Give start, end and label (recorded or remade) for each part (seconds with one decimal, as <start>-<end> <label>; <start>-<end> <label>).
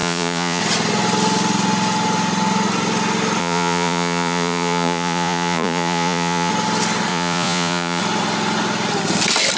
0.0-0.6 remade; 0.6-3.4 recorded; 3.4-6.5 remade; 6.5-7.1 recorded; 7.1-8.0 remade; 8.0-9.6 recorded